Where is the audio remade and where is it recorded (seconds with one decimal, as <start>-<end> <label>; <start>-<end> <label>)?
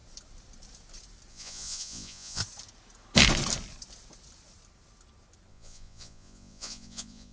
0.0-1.3 recorded; 1.3-2.4 remade; 2.4-5.5 recorded; 5.5-7.3 remade